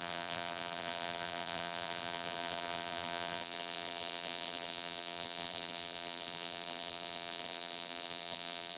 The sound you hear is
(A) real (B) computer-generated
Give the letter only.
B